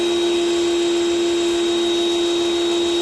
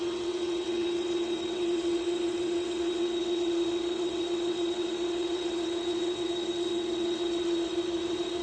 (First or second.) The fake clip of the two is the second